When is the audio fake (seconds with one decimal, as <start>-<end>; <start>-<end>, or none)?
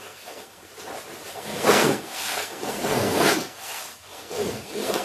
0.0-0.7; 1.3-5.0